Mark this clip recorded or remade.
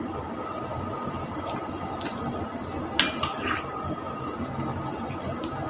recorded